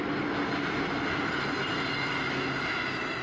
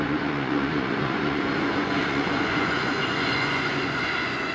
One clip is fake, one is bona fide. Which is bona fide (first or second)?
first